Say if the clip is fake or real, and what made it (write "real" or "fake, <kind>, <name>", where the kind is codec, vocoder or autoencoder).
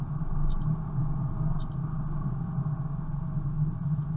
real